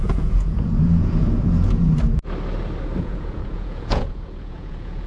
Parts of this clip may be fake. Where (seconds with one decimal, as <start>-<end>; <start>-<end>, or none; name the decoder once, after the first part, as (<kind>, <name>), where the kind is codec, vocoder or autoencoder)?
0.0-1.9 (vocoder, Vocos); 3.0-5.1